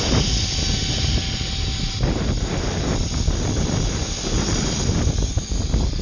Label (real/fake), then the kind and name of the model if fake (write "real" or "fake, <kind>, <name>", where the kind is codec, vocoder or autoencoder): real